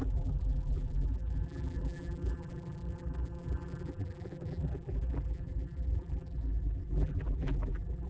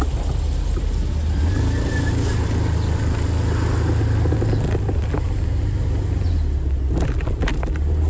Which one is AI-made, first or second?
first